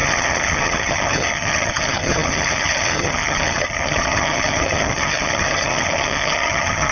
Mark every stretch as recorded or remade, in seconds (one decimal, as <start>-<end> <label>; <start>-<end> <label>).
0.0-6.9 remade